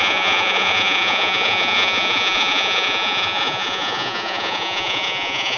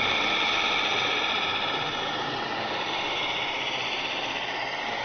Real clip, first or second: second